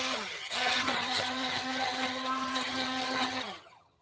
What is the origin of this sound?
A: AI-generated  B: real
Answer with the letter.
A